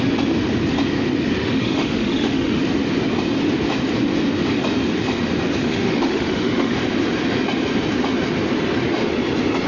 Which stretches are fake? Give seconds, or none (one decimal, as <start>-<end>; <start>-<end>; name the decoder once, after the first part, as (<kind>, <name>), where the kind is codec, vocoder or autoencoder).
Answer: 1.4-2.6 (autoencoder, DAC-VAE); 5.6-6.8

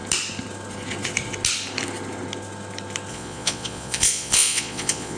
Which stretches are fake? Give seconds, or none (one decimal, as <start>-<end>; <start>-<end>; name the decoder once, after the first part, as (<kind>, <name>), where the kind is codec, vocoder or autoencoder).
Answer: 3.1-5.2 (vocoder, Vocos)

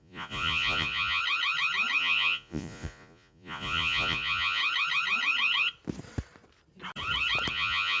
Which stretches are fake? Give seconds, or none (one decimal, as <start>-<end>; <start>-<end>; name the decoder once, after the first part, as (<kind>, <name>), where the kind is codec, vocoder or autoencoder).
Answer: 0.0-1.2 (vocoder, Vocos); 2.0-4.6; 7.5-8.0

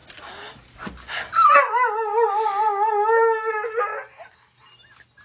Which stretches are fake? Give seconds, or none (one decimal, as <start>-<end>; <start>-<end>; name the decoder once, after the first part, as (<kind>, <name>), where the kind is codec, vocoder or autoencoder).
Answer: none

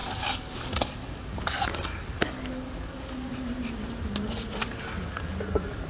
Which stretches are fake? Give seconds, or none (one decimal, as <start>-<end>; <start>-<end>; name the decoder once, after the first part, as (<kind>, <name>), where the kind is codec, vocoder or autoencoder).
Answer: 0.0-3.3 (codec, DAC)